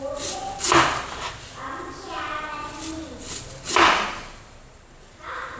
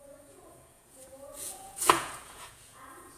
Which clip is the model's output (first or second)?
second